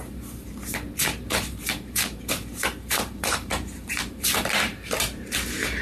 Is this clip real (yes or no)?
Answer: no